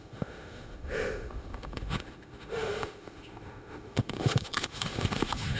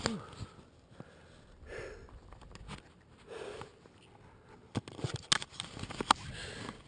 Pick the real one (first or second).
second